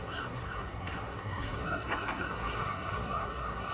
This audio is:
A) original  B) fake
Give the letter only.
B